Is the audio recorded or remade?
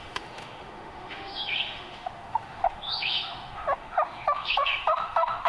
remade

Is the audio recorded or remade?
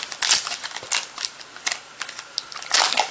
recorded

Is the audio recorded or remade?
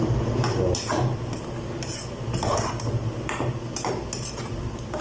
recorded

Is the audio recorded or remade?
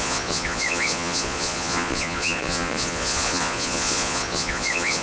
remade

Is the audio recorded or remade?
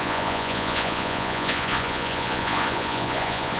remade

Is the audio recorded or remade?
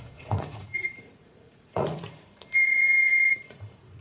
remade